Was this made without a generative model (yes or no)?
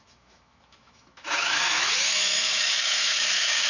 no